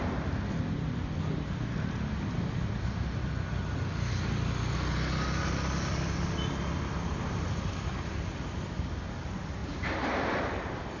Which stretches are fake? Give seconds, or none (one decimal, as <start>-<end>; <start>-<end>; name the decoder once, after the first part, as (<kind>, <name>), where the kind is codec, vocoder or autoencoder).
none